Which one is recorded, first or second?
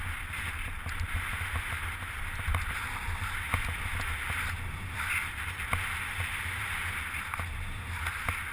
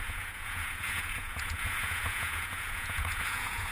first